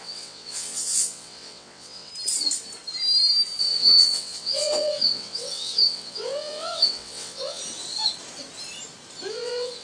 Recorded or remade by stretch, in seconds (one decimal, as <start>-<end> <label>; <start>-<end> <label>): 0.0-2.1 remade; 2.1-3.6 recorded; 3.6-7.6 remade; 7.6-9.3 recorded; 9.3-9.8 remade